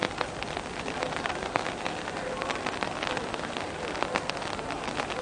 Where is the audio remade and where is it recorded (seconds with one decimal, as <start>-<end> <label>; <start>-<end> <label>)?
0.0-5.2 recorded